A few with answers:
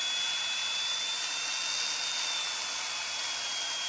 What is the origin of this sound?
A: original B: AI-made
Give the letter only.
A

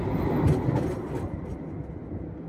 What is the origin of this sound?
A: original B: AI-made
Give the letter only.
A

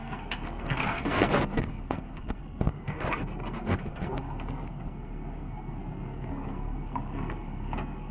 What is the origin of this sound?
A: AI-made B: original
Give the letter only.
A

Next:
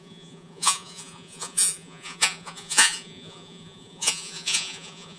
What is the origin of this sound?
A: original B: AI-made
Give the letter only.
B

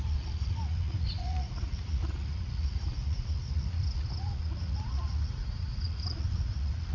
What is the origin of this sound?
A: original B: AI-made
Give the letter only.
B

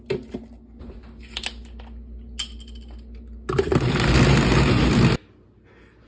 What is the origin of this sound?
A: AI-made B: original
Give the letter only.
B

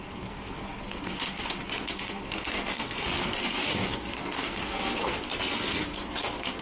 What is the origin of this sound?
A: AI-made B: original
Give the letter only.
A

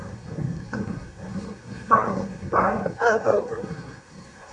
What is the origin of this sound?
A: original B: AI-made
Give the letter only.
B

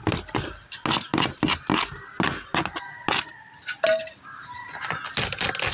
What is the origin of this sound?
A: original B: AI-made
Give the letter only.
A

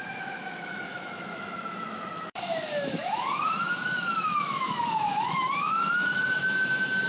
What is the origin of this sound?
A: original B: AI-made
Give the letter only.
B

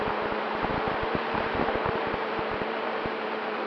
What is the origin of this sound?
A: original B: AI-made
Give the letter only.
B